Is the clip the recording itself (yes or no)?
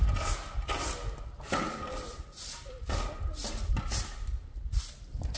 yes